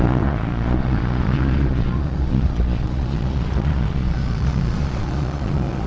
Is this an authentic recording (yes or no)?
no